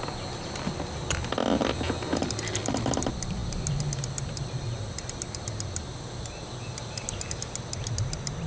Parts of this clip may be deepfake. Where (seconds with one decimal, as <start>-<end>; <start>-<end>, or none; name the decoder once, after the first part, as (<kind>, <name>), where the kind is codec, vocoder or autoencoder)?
none